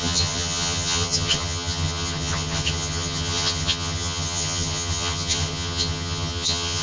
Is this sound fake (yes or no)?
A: yes